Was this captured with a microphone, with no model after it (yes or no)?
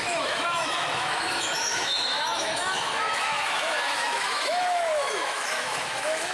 no